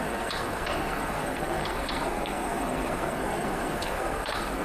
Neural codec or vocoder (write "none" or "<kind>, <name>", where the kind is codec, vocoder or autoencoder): codec, SNAC